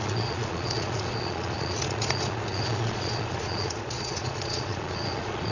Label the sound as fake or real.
fake